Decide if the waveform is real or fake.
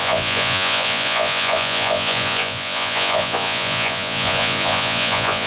fake